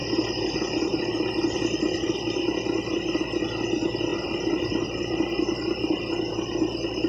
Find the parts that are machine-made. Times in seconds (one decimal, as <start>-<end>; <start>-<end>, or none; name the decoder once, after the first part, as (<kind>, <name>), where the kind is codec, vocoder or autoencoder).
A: none